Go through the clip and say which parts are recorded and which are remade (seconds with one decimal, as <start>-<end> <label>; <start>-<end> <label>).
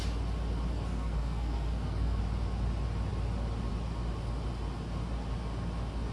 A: 0.0-0.7 recorded; 0.7-2.2 remade; 2.2-6.1 recorded